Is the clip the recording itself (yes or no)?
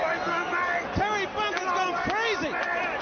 yes